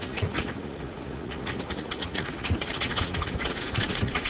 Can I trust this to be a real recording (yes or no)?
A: no